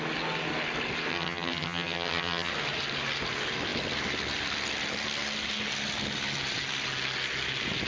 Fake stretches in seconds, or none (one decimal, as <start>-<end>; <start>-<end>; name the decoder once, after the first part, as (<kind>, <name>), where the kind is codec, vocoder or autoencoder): 1.1-2.5 (vocoder, HiFi-GAN)